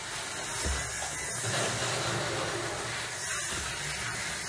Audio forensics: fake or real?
real